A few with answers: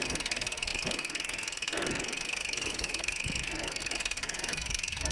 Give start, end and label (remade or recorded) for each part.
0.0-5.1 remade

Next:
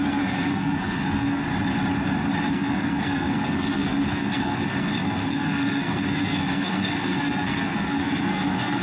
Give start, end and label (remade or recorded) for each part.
0.0-1.4 remade; 1.4-2.5 recorded; 2.5-8.8 remade

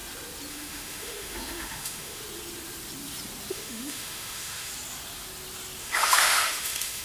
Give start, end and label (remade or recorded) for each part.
0.0-0.5 recorded; 0.5-2.2 remade; 2.2-3.5 recorded; 3.5-4.7 remade; 4.7-5.8 recorded; 5.8-7.0 remade

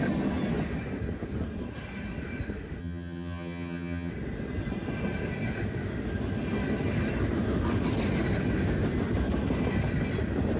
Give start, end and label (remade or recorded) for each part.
0.0-2.8 recorded; 2.8-4.1 remade; 4.1-10.6 recorded

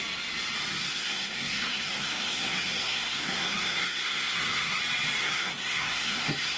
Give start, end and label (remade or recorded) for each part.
0.0-0.8 recorded; 0.8-4.8 remade; 4.8-5.2 recorded; 5.2-6.6 remade